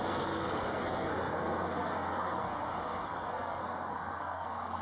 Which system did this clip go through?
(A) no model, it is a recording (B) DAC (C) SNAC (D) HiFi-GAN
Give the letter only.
C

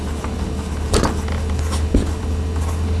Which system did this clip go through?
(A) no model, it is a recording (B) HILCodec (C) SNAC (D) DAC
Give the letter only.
A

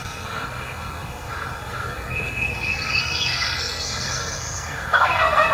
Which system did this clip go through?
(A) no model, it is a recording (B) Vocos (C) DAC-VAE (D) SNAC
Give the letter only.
D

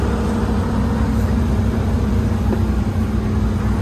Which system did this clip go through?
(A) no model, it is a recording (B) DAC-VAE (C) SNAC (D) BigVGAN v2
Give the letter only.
A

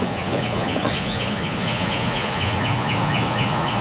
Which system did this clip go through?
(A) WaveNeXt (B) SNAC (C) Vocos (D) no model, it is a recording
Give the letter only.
C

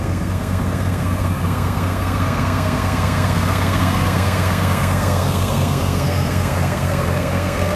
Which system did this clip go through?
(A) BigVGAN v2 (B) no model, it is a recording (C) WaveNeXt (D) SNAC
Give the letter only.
D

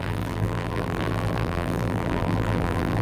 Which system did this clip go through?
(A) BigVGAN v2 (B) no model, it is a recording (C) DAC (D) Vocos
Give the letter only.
A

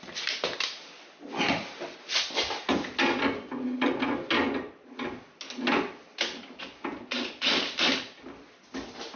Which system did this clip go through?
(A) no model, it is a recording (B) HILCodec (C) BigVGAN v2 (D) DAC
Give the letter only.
A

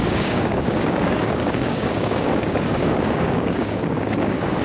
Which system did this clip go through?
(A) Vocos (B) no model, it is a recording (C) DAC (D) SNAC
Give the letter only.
C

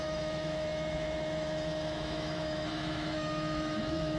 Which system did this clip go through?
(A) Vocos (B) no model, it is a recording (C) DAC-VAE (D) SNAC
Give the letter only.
C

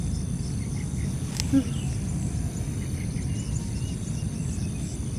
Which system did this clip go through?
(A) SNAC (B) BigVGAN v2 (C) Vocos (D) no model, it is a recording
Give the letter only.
D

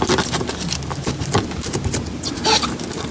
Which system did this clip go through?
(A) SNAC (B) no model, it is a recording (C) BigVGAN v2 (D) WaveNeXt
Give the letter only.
B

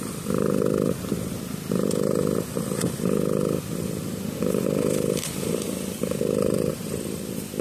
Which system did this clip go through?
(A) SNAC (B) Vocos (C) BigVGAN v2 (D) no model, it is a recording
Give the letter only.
D